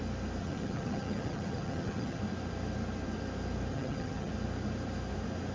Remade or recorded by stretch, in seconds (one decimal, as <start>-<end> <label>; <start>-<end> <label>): 0.0-0.4 recorded; 0.4-2.2 remade; 2.2-3.7 recorded; 3.7-4.3 remade; 4.3-5.5 recorded